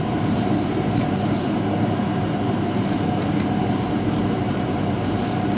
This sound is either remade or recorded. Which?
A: remade